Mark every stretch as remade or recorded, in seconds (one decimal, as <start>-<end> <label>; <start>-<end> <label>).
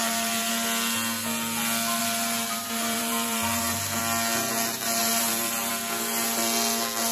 0.0-0.5 remade; 0.5-2.0 recorded; 2.0-4.0 remade; 4.0-5.0 recorded; 5.0-5.7 remade; 5.7-7.1 recorded